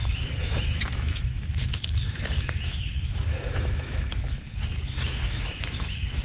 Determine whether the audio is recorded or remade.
remade